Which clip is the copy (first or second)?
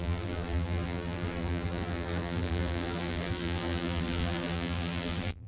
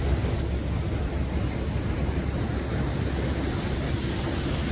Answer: first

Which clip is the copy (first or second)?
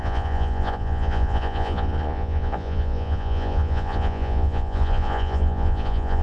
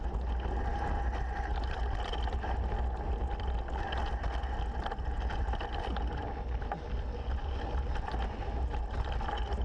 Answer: first